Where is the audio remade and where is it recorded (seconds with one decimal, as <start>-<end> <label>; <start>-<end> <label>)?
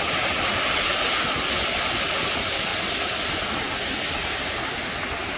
0.0-5.4 recorded